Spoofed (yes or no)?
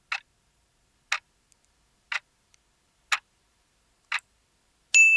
no